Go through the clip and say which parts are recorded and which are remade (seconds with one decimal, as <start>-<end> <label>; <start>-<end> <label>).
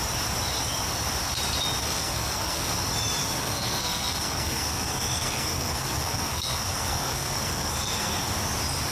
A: 0.0-1.8 recorded; 1.8-2.7 remade; 2.7-3.2 recorded; 3.2-8.2 remade; 8.2-8.9 recorded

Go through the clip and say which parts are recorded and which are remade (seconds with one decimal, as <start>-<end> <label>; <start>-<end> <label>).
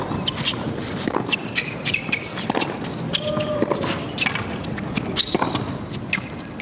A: 0.0-0.5 recorded; 0.5-2.0 remade; 2.0-6.6 recorded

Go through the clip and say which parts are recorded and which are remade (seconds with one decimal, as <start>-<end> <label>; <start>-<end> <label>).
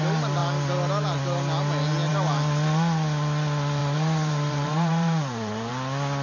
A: 0.0-3.8 recorded; 3.8-5.7 remade; 5.7-6.2 recorded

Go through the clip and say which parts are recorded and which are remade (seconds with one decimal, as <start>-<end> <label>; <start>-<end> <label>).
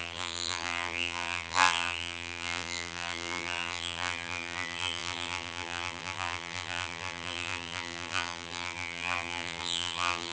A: 0.0-10.3 remade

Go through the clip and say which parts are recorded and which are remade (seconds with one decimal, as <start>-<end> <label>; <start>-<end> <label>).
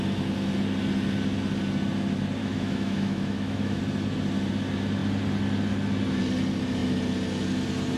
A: 0.0-2.4 recorded; 2.4-3.8 remade; 3.8-8.0 recorded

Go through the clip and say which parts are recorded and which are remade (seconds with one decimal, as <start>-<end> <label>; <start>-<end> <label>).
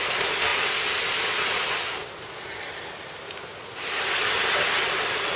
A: 0.0-5.4 recorded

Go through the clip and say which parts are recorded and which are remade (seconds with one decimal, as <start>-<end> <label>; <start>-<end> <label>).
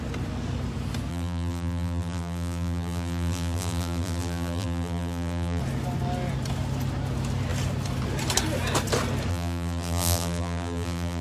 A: 0.0-1.1 recorded; 1.1-5.6 remade; 5.6-9.3 recorded; 9.3-11.2 remade